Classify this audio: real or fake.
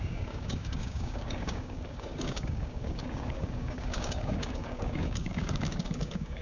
fake